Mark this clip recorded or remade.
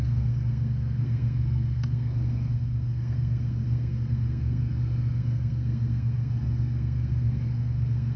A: remade